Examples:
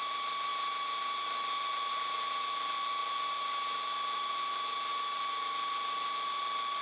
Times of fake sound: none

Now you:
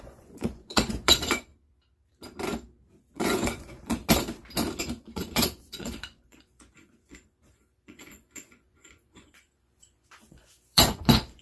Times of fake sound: 0.0-1.5 (vocoder, Vocos); 3.1-4.0; 4.8-11.4

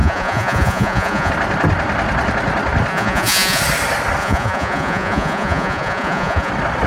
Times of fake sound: 0.0-1.3 (vocoder, Vocos); 2.9-3.6; 4.2-6.5

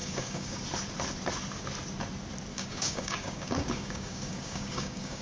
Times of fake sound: 0.0-0.6 (codec, DAC); 2.5-5.2

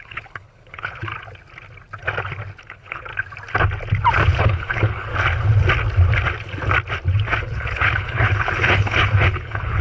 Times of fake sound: 0.0-1.1 (codec, HILCodec); 2.6-3.1; 4.4-5.1; 7.4-9.8

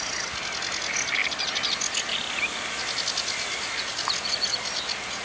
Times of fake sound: none